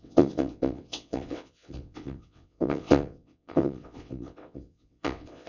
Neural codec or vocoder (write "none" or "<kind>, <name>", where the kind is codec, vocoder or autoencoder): vocoder, WaveNeXt